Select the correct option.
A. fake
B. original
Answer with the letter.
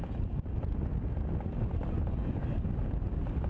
B